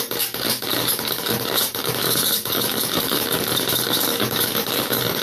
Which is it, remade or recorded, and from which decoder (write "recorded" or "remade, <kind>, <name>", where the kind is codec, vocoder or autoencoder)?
remade, codec, DAC